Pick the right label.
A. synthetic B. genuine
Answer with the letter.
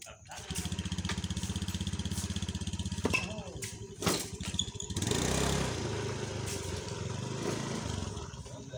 B